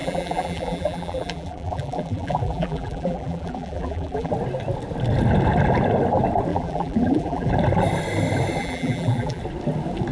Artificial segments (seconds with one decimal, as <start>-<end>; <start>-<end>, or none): 0.0-4.3; 6.5-7.5; 8.6-9.4